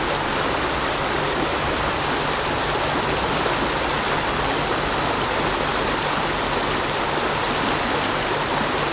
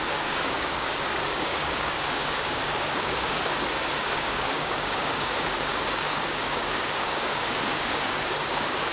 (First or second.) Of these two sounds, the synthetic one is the second